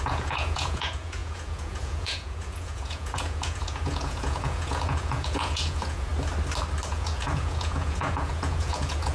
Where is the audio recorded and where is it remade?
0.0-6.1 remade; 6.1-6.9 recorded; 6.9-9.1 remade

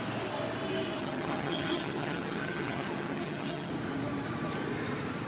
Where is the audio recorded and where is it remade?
0.0-1.0 recorded; 1.0-3.7 remade; 3.7-5.3 recorded

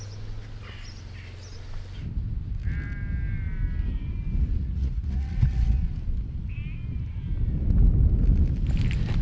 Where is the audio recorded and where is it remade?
0.0-4.6 recorded; 4.6-5.9 remade; 5.9-9.2 recorded